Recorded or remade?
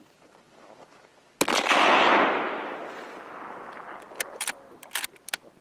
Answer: recorded